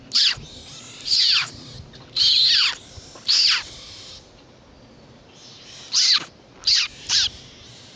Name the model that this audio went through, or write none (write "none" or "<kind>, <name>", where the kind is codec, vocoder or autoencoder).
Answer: none